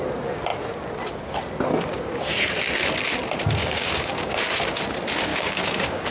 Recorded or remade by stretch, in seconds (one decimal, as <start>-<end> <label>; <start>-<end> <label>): 0.0-3.6 recorded; 3.6-4.4 remade; 4.4-5.3 recorded; 5.3-6.1 remade